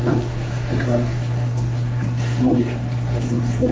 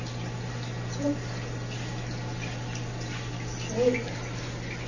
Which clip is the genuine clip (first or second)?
second